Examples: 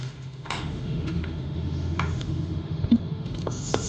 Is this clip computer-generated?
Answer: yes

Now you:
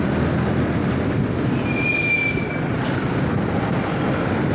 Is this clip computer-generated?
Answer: no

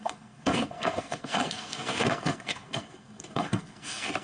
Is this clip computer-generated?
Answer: yes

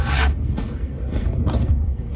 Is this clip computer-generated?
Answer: yes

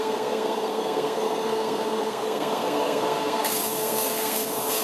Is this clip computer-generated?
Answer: yes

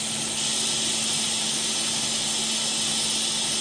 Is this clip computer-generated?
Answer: no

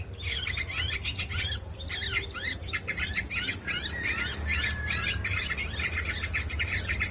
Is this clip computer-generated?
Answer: no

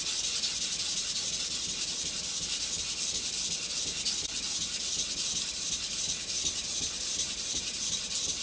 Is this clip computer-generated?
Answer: yes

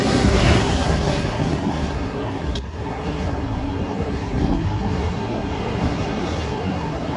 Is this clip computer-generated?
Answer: yes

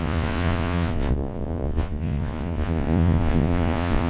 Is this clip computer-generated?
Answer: yes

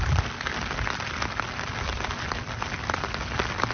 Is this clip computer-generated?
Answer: no